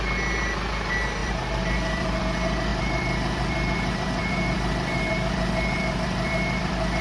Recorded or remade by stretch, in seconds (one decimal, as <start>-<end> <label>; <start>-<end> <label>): 0.0-1.2 recorded; 1.2-2.2 remade; 2.2-2.7 recorded; 2.7-7.0 remade